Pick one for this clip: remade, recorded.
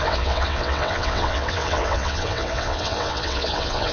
remade